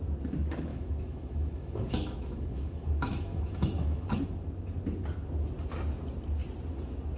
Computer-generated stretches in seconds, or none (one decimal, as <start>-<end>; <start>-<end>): 0.7-4.2